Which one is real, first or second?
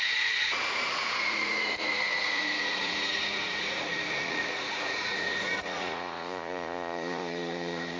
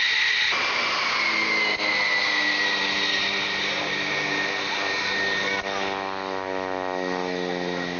second